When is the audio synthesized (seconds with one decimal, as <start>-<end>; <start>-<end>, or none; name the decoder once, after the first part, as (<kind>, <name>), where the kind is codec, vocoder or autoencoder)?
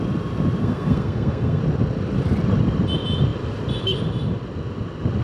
0.6-1.6 (codec, SNAC)